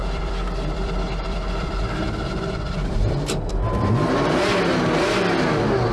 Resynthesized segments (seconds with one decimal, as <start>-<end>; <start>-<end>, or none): 0.0-3.5